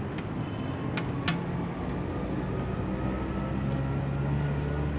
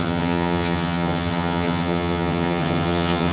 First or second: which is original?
first